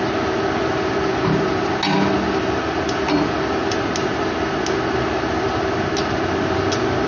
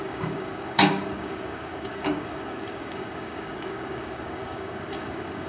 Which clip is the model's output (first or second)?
second